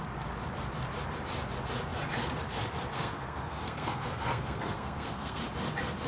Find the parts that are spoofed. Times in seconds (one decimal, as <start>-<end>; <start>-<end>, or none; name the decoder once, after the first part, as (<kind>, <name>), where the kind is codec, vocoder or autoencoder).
2.9-5.4 (codec, SNAC)